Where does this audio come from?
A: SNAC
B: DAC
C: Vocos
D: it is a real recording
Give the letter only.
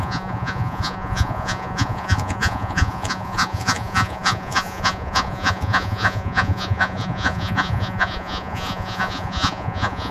C